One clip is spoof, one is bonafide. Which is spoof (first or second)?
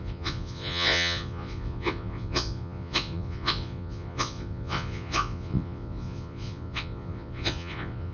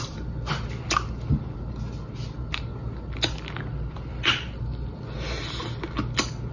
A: first